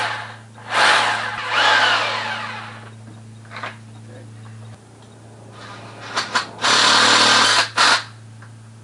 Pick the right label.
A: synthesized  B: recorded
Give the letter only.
B